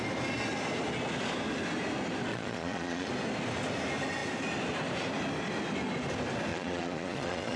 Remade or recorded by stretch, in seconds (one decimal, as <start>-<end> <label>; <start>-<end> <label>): 0.0-2.3 recorded; 2.3-3.1 remade; 3.1-6.5 recorded; 6.5-7.6 remade